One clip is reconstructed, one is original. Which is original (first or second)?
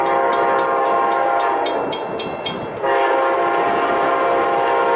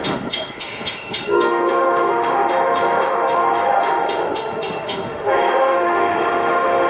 first